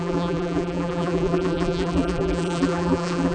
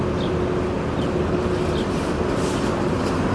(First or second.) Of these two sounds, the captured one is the second